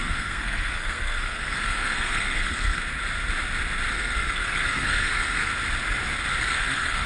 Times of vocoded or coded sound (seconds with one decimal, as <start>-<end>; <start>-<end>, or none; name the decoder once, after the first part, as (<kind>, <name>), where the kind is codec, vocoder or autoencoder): 0.0-2.8 (codec, SNAC); 3.9-5.5; 6.4-7.1